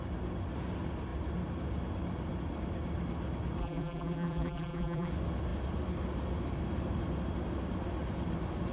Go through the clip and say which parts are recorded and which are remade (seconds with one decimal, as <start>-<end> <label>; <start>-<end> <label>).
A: 0.0-3.6 recorded; 3.6-5.1 remade; 5.1-8.7 recorded